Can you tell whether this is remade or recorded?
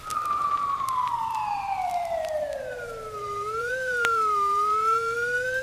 remade